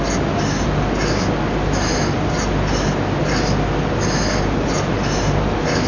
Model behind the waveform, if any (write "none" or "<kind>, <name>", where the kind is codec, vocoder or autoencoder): none